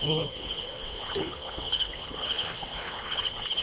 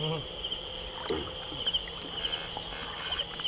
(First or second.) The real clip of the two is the second